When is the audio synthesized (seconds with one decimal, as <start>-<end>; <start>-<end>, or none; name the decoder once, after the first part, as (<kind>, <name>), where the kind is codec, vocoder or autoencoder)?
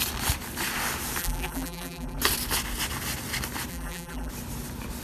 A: 1.2-2.2 (vocoder, BigVGAN v2); 3.7-4.3